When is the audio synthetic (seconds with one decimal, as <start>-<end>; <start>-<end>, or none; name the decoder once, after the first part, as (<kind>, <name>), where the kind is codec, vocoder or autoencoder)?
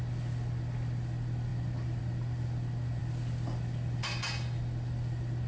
none